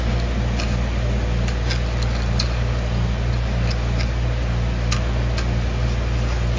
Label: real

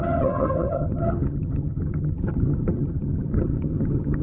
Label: fake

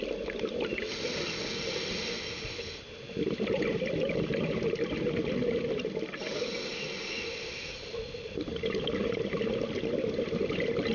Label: real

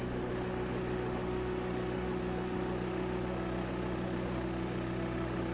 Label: fake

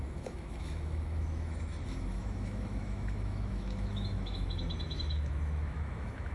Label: fake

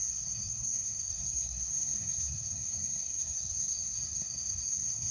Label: fake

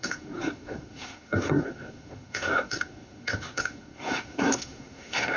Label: fake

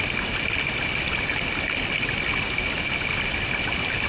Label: real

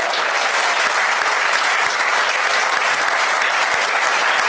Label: real